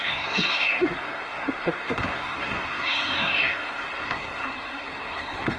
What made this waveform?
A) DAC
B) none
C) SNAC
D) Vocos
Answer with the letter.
C